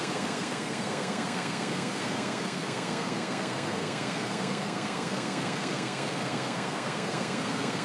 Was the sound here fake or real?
fake